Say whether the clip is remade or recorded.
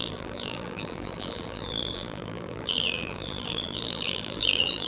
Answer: remade